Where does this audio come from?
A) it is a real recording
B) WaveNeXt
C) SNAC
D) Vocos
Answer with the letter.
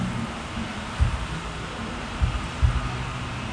A